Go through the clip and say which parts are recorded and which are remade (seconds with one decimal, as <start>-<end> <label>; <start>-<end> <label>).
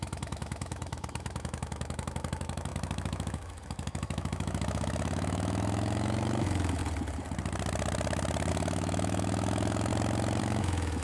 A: 0.0-6.8 remade; 6.8-8.5 recorded; 8.5-9.9 remade; 9.9-10.4 recorded; 10.4-11.0 remade